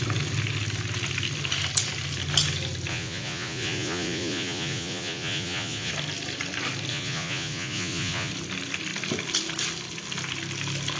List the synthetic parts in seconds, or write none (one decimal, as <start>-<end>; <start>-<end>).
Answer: 2.9-5.9; 6.9-8.3